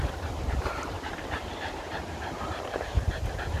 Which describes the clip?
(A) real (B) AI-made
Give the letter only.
B